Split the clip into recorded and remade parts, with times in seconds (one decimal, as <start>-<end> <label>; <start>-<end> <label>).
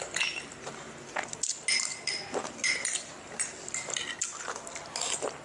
0.0-5.4 recorded